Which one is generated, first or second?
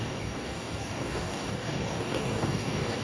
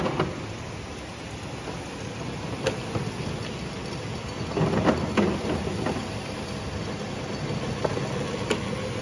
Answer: first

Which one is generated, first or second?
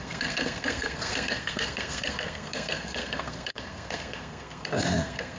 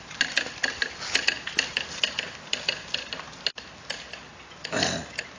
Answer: first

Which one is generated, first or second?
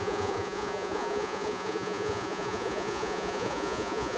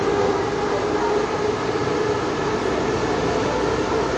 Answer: first